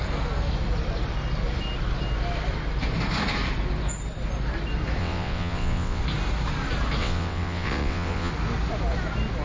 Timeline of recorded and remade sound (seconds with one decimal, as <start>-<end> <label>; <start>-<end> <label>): 0.0-5.0 recorded; 5.0-6.0 remade; 6.0-7.0 recorded; 7.0-8.3 remade; 8.3-9.4 recorded